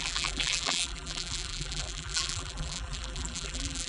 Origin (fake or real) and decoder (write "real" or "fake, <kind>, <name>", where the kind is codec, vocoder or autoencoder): fake, vocoder, BigVGAN v2